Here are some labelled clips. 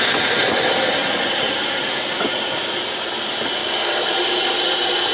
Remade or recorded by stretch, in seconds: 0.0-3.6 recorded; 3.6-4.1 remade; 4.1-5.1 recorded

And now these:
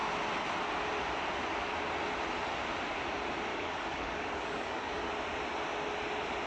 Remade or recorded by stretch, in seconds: 0.0-3.5 recorded; 3.5-5.1 remade; 5.1-6.5 recorded

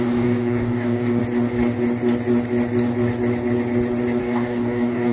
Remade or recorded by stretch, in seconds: 0.0-1.2 remade; 1.2-4.2 recorded; 4.2-5.1 remade